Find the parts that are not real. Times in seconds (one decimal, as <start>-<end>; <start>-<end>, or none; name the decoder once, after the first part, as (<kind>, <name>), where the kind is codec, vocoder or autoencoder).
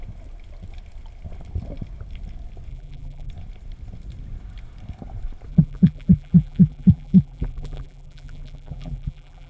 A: 2.7-3.3 (vocoder, BigVGAN v2); 5.5-9.5